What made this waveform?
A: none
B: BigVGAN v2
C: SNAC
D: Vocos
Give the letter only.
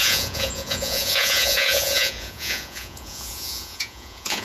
D